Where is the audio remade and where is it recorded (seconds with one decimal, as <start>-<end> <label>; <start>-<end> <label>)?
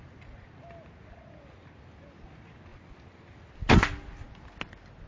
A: 0.0-5.1 recorded